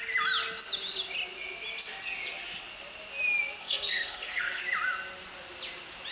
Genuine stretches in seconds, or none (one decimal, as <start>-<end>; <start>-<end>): 0.0-3.6; 4.6-6.1